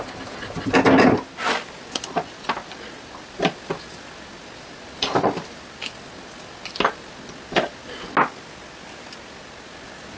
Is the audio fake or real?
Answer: real